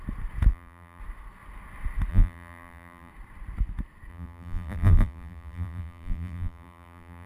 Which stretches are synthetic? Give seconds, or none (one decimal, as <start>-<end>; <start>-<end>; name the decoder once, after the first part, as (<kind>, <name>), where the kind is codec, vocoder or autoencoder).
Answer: 0.5-1.0 (vocoder, BigVGAN v2); 2.1-3.1; 4.1-7.3